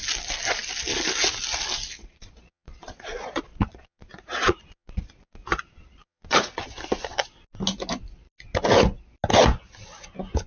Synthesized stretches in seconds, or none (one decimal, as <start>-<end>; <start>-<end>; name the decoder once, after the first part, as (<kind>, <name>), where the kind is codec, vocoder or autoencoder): 2.0-6.6 (vocoder, Vocos)